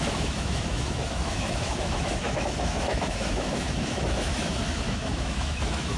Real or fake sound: fake